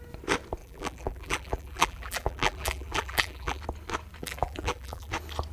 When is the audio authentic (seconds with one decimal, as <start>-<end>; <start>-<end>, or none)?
0.0-0.6; 3.6-4.2; 5.1-5.5